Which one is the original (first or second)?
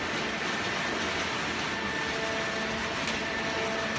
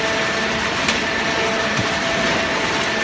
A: first